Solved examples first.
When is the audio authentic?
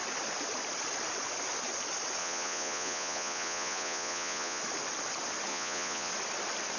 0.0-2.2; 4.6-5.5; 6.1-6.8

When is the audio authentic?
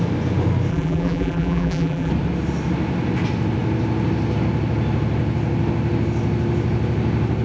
0.0-0.7; 2.1-7.4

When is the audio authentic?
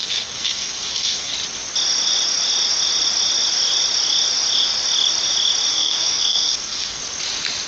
1.3-5.7; 7.0-7.7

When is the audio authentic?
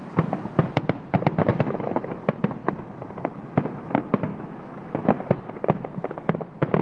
0.0-1.4; 2.1-2.6; 3.8-4.3; 5.2-6.8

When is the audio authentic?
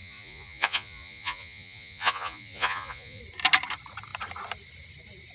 3.2-5.3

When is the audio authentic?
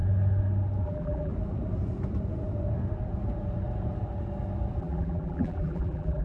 0.0-0.8; 1.3-4.8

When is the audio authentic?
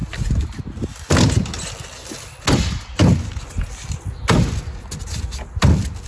0.0-6.1